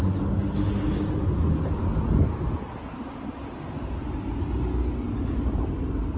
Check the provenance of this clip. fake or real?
real